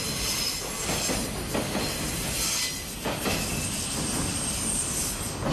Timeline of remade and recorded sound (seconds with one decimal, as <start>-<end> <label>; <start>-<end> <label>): 0.0-5.5 recorded